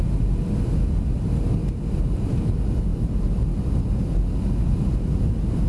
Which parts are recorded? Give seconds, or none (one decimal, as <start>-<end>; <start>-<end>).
0.0-5.7